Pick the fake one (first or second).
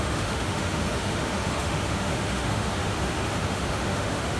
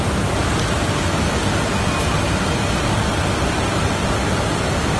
first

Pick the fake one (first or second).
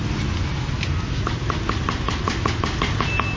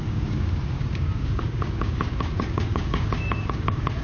second